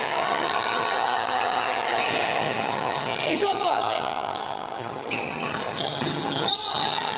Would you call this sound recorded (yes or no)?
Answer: no